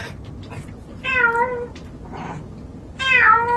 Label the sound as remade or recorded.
recorded